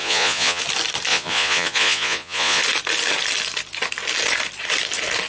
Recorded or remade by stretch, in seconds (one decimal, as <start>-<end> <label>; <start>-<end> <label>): 0.0-0.6 remade; 0.6-1.1 recorded; 1.1-2.6 remade; 2.6-5.3 recorded